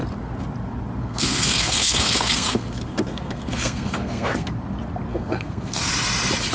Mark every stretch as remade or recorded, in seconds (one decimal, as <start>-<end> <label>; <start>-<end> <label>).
0.0-1.0 recorded; 1.0-4.5 remade; 4.5-5.1 recorded; 5.1-5.9 remade; 5.9-6.5 recorded